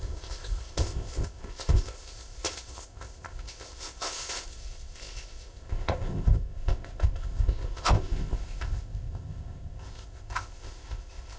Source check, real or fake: fake